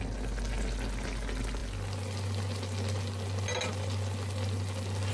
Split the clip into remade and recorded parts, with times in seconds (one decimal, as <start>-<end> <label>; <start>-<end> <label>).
0.0-5.1 recorded